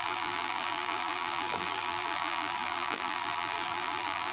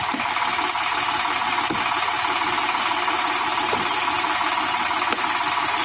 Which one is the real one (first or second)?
second